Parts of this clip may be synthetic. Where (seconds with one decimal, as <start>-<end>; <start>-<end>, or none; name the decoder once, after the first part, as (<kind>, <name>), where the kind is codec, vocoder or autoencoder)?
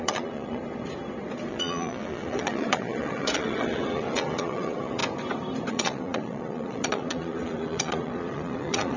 0.0-0.6 (vocoder, Vocos); 1.5-5.0; 5.7-9.0